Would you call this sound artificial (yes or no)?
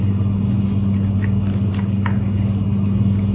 no